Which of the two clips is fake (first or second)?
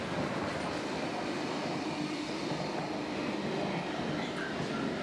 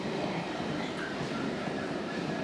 second